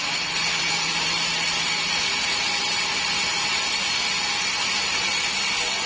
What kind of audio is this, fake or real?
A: real